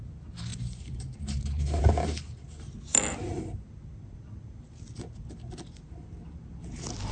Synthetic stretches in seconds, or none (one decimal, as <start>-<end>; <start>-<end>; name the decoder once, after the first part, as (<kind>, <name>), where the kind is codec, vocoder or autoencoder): 0.5-1.8 (vocoder, BigVGAN v2)